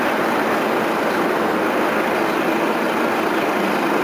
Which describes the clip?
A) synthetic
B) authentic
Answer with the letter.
B